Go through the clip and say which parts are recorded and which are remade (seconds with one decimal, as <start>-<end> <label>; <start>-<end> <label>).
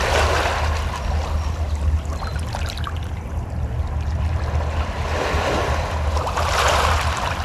0.0-7.4 recorded